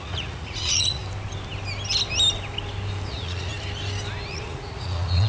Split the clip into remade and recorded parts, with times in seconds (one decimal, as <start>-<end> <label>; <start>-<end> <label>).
0.0-1.0 remade; 1.0-3.1 recorded; 3.1-3.5 remade; 3.5-4.3 recorded; 4.3-5.3 remade